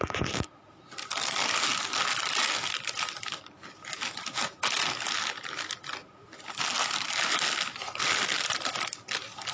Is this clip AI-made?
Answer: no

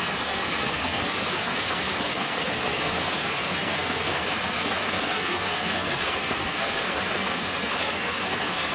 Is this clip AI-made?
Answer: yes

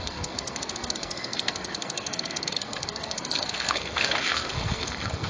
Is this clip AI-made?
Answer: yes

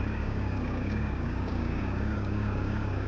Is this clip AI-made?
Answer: yes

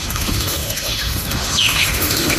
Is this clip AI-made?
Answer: yes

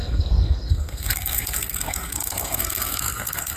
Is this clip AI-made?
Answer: yes